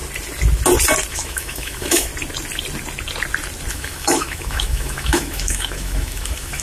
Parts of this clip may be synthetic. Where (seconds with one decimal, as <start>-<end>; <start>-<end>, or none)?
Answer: 1.1-2.1; 3.7-6.6